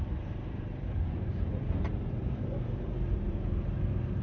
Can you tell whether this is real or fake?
fake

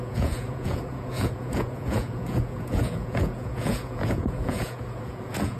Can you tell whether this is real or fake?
fake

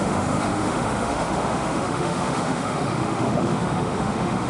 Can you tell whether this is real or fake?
fake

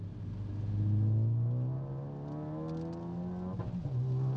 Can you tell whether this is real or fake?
real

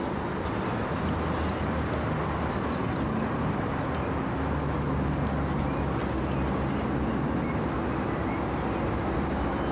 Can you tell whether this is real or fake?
real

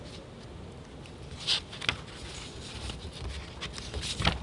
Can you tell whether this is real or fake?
real